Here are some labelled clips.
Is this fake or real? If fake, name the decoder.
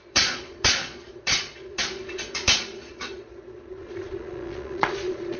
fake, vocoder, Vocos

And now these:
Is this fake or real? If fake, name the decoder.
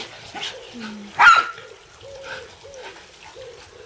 real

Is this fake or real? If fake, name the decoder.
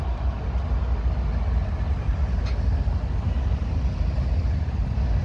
real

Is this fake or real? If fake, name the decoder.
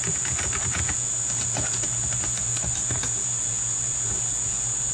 fake, vocoder, Vocos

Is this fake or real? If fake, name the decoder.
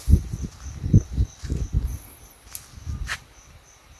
real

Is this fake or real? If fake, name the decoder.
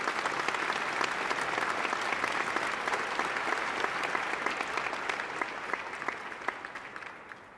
real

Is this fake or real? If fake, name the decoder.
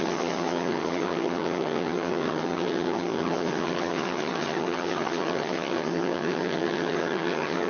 fake, vocoder, HiFi-GAN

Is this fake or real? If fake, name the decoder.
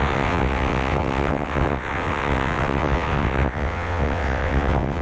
fake, vocoder, WaveNeXt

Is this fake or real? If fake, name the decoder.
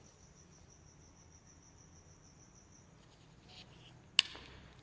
real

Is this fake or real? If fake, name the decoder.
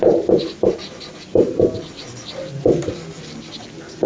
real